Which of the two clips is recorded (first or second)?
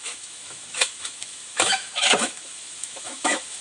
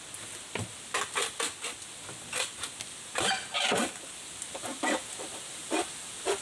second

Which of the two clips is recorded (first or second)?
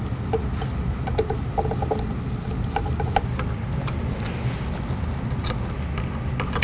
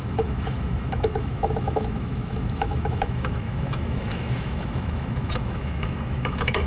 first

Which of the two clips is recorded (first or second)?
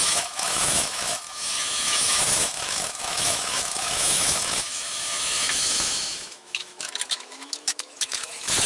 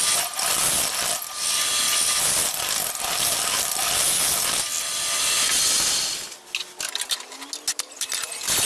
second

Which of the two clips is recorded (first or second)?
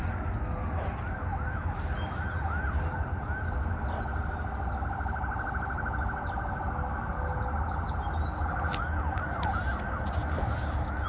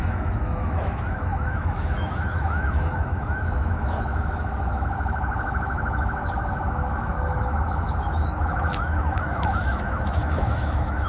first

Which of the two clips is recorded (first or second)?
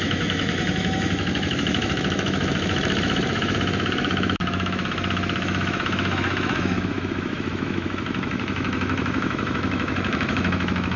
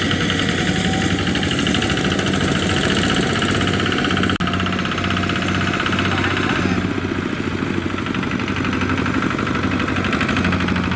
second